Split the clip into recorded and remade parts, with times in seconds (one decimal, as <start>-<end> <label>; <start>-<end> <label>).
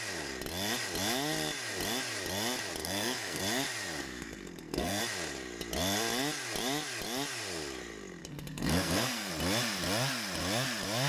0.0-2.8 recorded; 2.8-3.4 remade; 3.4-4.0 recorded; 4.0-5.0 remade; 5.0-8.2 recorded; 8.2-9.3 remade; 9.3-11.1 recorded